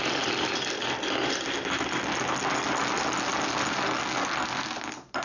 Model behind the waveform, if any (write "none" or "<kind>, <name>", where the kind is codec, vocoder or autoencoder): none